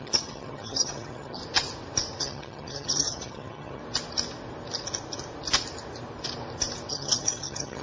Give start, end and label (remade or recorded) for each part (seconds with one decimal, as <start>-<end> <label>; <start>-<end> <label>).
0.0-1.4 remade; 1.4-2.2 recorded; 2.2-3.8 remade; 3.8-6.9 recorded; 6.9-7.8 remade